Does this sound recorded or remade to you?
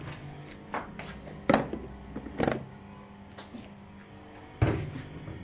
recorded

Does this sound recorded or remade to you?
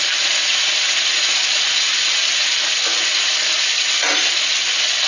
recorded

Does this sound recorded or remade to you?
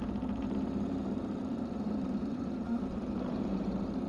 remade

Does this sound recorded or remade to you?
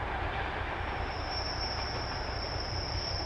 recorded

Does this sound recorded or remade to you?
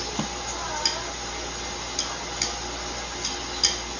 recorded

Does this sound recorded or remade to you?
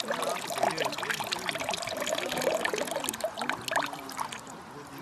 recorded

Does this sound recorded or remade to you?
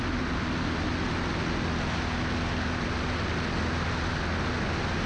recorded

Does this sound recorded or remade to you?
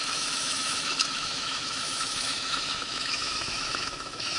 remade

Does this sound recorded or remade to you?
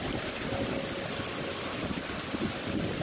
recorded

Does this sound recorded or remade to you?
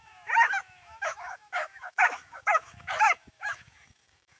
remade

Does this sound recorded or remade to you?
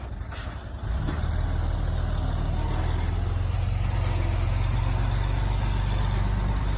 recorded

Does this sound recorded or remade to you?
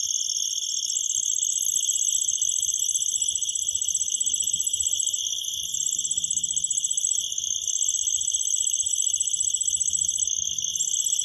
recorded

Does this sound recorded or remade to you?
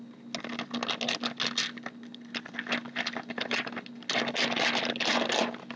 recorded